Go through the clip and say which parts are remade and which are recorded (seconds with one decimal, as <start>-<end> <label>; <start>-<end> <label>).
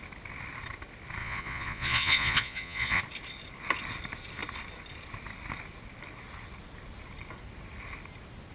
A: 0.0-1.2 recorded; 1.2-3.0 remade; 3.0-8.5 recorded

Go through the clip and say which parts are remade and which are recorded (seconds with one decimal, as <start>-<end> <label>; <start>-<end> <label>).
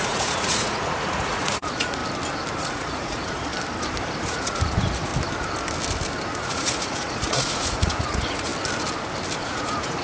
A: 0.0-2.0 remade; 2.0-2.6 recorded; 2.6-3.5 remade; 3.5-4.2 recorded; 4.2-5.1 remade; 5.1-6.4 recorded; 6.4-8.5 remade; 8.5-9.4 recorded; 9.4-10.0 remade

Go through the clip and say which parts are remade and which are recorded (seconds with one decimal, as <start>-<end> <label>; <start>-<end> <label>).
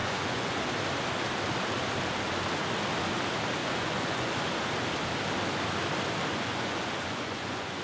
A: 0.0-0.6 remade; 0.6-3.6 recorded; 3.6-4.3 remade; 4.3-6.3 recorded; 6.3-7.8 remade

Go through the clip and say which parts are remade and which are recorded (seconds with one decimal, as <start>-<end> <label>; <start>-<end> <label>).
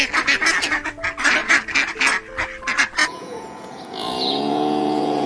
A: 0.0-3.0 recorded; 3.0-5.3 remade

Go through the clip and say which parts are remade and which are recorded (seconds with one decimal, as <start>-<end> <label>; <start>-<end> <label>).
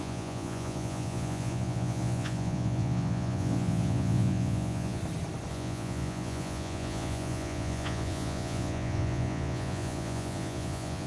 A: 0.0-5.0 remade; 5.0-5.5 recorded; 5.5-11.1 remade